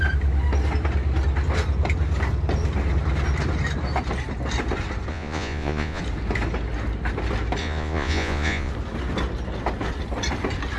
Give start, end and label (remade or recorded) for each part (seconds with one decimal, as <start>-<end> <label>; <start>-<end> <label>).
0.0-5.1 recorded; 5.1-6.0 remade; 6.0-7.6 recorded; 7.6-8.7 remade; 8.7-10.8 recorded